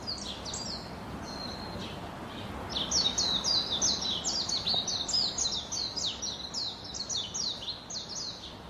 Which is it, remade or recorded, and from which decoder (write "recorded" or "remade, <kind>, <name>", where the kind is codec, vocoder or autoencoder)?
recorded